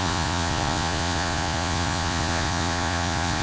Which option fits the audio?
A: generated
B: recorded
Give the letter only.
A